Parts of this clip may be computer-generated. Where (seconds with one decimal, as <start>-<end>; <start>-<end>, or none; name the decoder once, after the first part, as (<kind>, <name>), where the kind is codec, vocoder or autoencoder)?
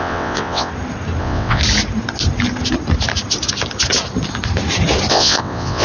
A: 0.0-0.7 (vocoder, WaveNeXt); 1.2-1.6; 5.1-5.8